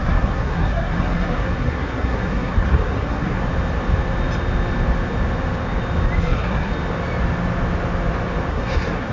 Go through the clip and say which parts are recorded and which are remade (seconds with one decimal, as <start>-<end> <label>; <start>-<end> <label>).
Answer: 0.0-3.4 remade; 3.4-6.2 recorded; 6.2-6.7 remade; 6.7-8.5 recorded; 8.5-9.1 remade